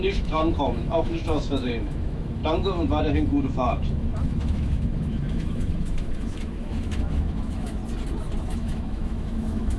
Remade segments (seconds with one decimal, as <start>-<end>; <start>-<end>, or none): 0.0-2.4; 3.0-7.8; 8.4-9.8